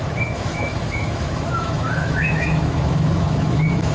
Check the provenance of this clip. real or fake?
fake